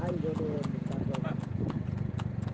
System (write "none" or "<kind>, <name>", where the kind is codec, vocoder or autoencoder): none